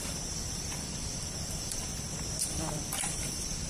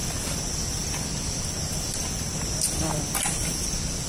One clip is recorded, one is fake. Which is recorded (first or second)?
second